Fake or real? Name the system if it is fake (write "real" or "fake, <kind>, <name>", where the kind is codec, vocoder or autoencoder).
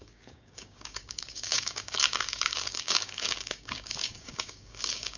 fake, codec, DAC